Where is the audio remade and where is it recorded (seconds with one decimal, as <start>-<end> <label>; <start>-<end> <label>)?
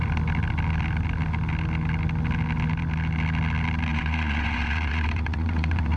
0.0-3.9 recorded; 3.9-6.0 remade